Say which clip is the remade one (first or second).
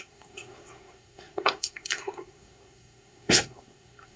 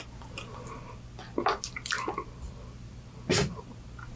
first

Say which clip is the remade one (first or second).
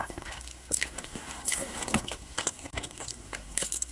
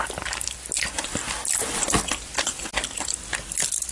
first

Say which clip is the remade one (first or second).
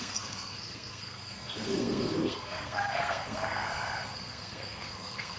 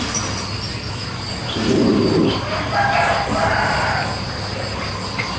first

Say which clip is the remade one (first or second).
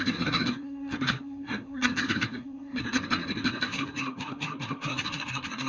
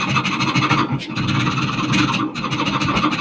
first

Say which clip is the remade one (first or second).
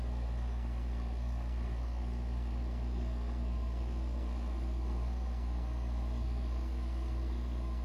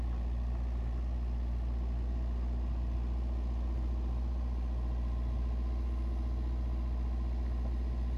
first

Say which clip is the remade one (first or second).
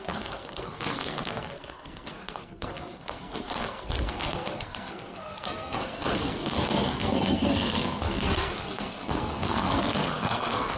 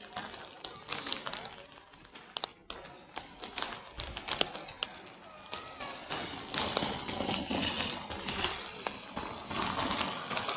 first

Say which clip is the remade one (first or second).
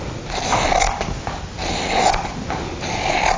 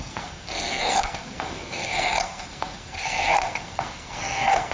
second